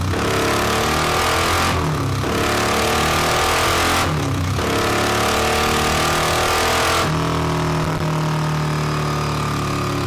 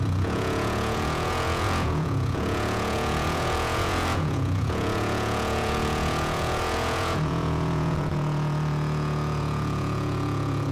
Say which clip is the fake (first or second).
second